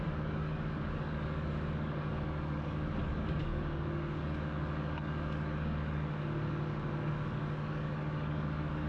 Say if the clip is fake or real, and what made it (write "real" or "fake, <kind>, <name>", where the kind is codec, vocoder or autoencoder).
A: fake, codec, DAC